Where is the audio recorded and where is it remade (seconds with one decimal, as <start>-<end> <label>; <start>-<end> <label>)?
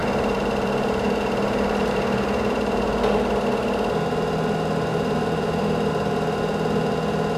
0.0-2.8 remade; 2.8-4.9 recorded; 4.9-5.9 remade; 5.9-7.4 recorded